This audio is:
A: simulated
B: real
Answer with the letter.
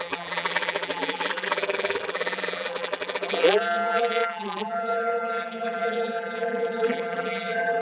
A